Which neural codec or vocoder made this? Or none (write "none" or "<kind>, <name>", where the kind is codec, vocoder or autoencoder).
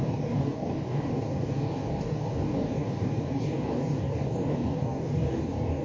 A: codec, DAC